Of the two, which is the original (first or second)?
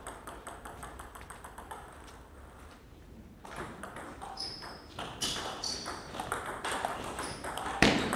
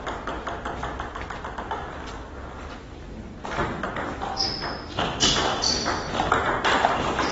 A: second